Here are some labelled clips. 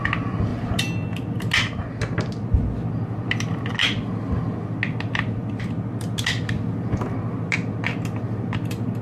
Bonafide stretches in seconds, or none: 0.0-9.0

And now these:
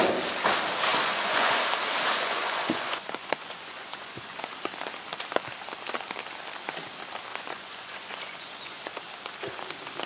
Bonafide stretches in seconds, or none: 0.0-0.9; 1.6-2.1; 4.5-7.3; 8.8-10.1

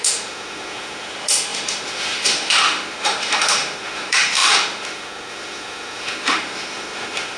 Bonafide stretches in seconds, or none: none